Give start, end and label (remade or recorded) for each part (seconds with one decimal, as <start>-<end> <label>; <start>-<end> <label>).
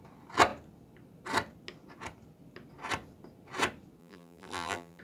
0.0-4.0 recorded; 4.0-5.0 remade